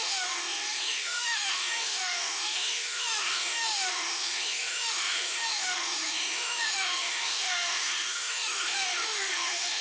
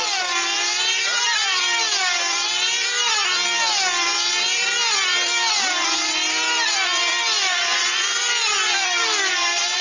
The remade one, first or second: first